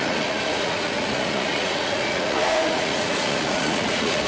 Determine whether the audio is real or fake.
fake